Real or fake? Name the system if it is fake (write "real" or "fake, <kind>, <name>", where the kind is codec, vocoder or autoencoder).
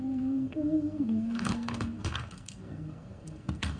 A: fake, codec, SNAC